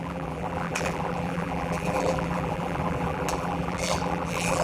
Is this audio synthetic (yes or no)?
yes